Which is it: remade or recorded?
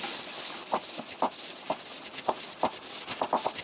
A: recorded